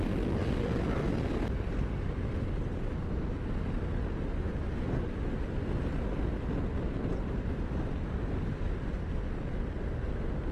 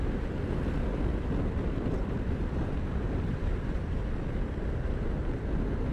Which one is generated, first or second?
second